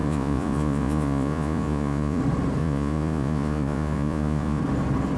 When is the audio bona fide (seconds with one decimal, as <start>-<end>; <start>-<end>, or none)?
2.2-2.6; 4.6-5.2